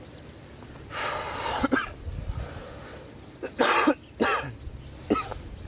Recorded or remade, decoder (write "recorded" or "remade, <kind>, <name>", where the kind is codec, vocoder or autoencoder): recorded